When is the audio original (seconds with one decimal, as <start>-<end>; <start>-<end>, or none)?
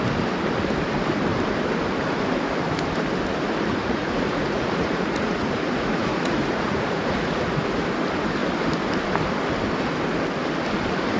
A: 0.0-3.8; 7.6-11.2